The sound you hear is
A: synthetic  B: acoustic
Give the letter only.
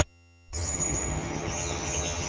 A